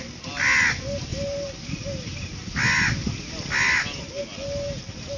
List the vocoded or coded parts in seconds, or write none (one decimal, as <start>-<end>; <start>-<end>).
1.1-4.2